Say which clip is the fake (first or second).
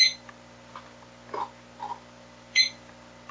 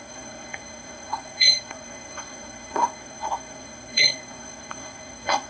second